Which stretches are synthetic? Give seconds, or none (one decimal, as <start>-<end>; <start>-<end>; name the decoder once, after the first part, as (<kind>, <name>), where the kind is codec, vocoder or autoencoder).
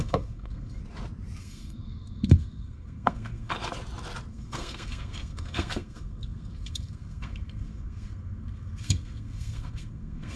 0.0-0.8 (codec, SNAC); 1.4-3.5; 4.3-10.4